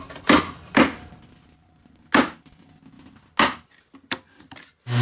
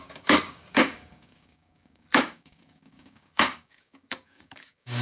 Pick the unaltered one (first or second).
first